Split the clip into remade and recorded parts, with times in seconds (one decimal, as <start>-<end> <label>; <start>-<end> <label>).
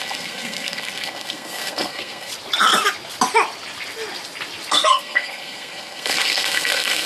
0.0-2.3 remade; 2.3-4.7 recorded; 4.7-7.1 remade